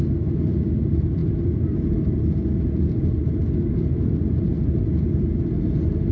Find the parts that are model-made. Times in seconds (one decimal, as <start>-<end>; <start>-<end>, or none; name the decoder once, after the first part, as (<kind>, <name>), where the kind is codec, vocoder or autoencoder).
none